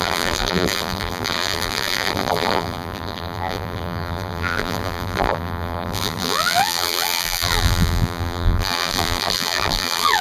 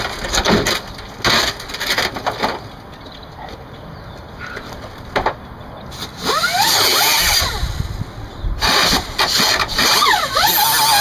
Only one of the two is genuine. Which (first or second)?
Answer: second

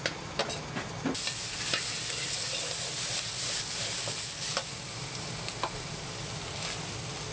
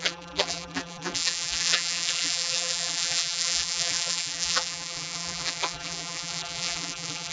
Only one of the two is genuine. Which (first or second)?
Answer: first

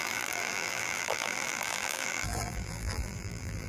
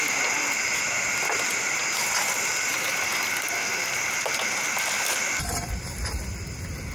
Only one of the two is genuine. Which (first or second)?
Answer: second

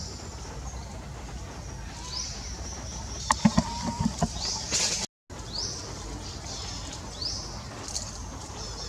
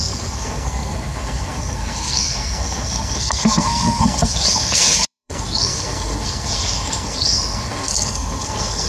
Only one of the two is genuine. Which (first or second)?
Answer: first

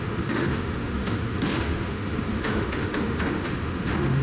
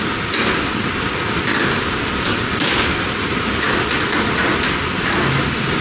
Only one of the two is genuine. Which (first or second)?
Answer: second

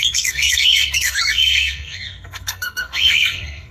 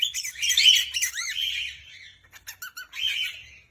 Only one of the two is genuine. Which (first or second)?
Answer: second